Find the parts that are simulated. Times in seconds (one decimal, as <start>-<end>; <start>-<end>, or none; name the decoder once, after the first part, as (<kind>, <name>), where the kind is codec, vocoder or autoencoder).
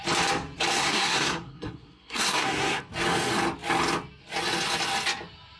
0.7-2.8 (codec, SNAC)